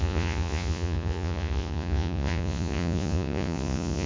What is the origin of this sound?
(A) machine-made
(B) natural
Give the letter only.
A